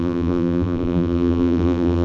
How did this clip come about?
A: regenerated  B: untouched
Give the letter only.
A